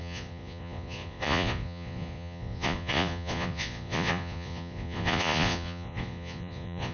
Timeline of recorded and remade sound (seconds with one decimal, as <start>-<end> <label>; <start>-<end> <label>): 0.0-6.9 remade